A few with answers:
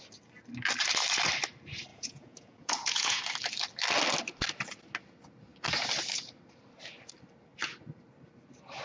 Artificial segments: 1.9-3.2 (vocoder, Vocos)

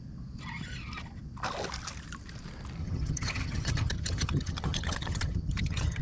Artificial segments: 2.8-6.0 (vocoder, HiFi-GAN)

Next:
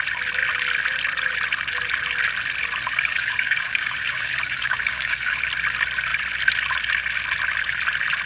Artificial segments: 2.9-5.4 (codec, DAC)

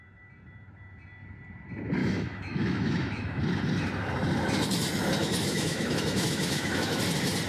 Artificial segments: 2.0-3.4 (autoencoder, DAC-VAE); 5.2-7.0

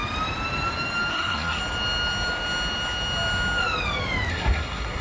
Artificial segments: 1.1-1.6 (codec, SNAC); 4.3-5.0